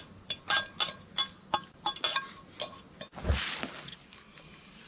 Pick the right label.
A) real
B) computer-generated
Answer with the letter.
A